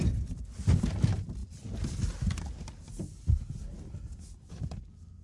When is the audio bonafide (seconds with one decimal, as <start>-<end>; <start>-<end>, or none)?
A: 0.0-5.2